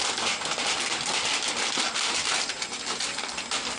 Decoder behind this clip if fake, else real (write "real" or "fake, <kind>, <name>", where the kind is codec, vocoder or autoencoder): real